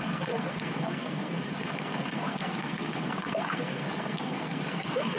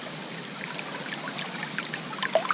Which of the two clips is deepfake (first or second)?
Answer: first